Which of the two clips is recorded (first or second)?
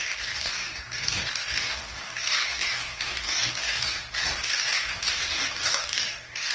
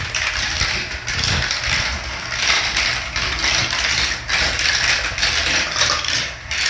second